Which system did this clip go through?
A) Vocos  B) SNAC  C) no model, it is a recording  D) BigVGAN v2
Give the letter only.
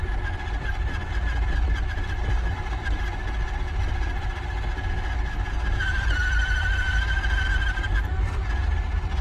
D